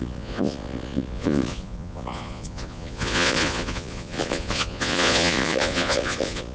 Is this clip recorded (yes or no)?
no